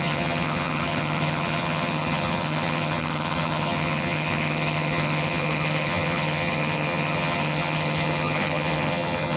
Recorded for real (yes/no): no